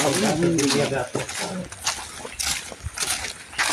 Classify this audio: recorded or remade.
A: recorded